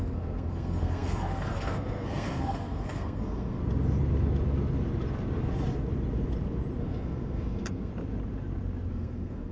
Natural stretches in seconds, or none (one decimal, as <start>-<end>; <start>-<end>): 3.6-6.8; 7.9-8.9